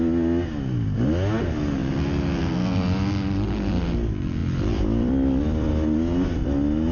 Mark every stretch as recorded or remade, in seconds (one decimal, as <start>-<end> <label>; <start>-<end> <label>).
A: 0.0-4.4 recorded; 4.4-5.7 remade; 5.7-6.9 recorded